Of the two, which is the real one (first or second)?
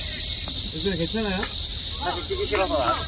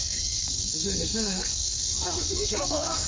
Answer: first